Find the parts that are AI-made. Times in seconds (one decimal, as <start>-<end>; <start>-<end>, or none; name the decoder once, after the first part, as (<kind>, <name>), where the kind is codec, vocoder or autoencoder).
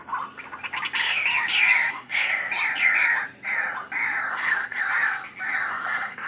1.9-2.3 (codec, SNAC); 4.3-4.8; 5.7-6.3